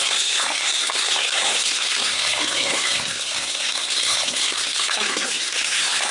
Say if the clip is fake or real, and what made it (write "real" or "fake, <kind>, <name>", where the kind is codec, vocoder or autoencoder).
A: fake, codec, SNAC